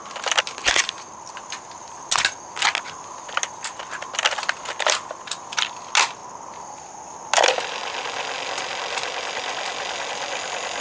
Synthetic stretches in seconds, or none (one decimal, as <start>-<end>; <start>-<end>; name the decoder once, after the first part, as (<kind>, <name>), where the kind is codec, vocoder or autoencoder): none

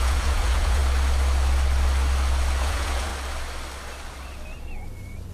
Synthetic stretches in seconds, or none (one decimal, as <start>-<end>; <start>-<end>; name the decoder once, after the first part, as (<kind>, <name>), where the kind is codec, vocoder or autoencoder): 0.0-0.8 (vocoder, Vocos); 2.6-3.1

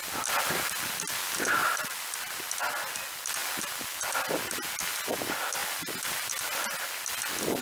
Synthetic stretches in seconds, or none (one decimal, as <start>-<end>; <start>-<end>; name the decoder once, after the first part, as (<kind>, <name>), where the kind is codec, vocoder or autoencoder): 1.6-2.3 (vocoder, BigVGAN v2); 5.6-6.2

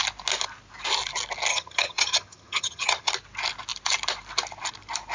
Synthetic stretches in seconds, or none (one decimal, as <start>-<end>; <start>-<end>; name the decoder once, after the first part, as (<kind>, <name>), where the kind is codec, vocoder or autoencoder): 1.5-3.1 (vocoder, HiFi-GAN)